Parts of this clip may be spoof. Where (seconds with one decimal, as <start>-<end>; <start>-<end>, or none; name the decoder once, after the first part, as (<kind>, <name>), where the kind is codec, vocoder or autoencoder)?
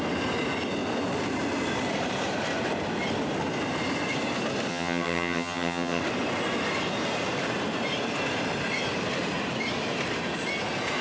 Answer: 4.7-6.0 (vocoder, HiFi-GAN)